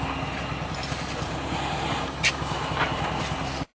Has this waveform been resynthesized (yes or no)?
no